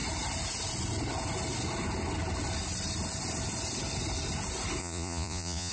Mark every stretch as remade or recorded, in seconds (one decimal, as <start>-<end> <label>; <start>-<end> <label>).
0.0-4.8 recorded; 4.8-5.7 remade